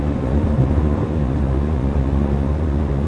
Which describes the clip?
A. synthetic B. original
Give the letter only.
A